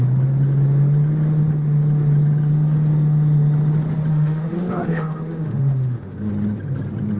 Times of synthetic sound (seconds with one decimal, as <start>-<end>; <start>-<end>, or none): 4.1-6.3